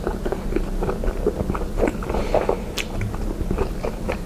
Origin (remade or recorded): recorded